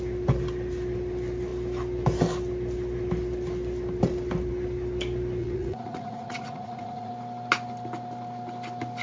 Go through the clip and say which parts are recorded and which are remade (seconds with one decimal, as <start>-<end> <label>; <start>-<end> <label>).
0.0-5.4 recorded; 5.4-7.1 remade; 7.1-9.0 recorded